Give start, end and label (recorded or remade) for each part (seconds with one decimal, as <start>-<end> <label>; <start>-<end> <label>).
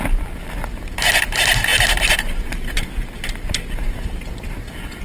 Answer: 0.0-5.0 recorded